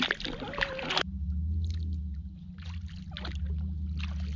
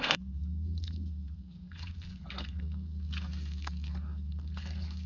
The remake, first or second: second